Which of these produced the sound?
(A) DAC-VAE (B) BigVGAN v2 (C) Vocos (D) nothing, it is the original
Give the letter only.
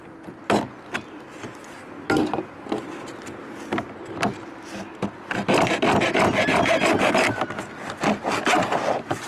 D